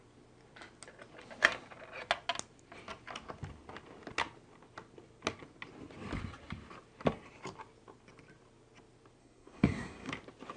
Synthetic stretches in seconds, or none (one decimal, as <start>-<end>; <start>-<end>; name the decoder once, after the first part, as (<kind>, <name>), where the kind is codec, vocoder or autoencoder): 9.2-10.1 (codec, SNAC)